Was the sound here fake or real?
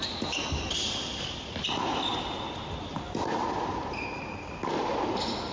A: real